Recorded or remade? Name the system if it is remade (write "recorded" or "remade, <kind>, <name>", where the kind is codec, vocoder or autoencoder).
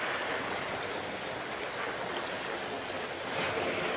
recorded